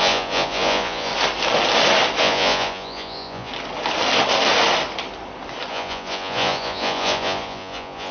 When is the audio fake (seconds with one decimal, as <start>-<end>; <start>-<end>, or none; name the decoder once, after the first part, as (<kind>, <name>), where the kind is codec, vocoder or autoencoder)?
0.0-1.1 (vocoder, Vocos); 2.2-3.5; 5.7-8.1